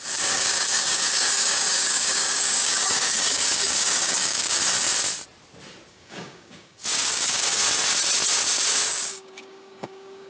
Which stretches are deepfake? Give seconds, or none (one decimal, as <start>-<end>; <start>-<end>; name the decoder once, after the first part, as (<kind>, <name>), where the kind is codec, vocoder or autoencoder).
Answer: 0.0-4.6 (codec, DAC); 5.9-7.6; 8.9-10.3